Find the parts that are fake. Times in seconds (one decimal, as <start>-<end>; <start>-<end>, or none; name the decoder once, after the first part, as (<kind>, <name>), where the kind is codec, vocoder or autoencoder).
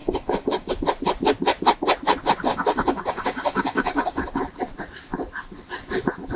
0.0-0.7 (codec, DAC); 2.5-4.3